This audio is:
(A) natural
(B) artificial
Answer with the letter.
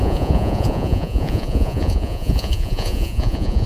B